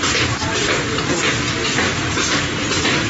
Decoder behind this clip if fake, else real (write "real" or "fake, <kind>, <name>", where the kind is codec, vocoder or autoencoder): real